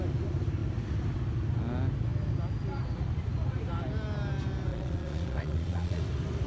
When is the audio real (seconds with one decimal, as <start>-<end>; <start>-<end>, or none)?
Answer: 0.0-4.7; 6.0-6.5